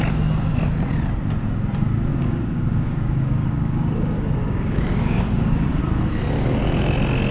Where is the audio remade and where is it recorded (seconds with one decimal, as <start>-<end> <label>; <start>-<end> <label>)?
0.0-2.1 recorded; 2.1-5.8 remade; 5.8-7.3 recorded